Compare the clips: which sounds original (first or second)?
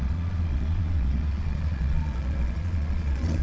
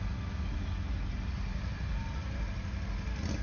second